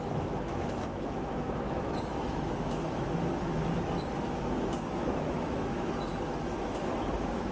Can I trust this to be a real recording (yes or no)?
no